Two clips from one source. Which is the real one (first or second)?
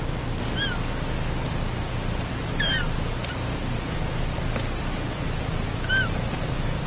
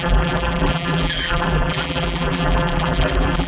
first